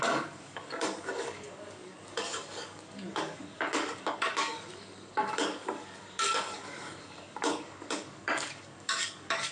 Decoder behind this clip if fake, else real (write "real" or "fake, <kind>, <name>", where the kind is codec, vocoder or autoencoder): fake, codec, DAC